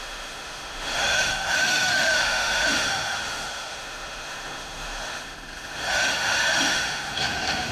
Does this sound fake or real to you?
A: fake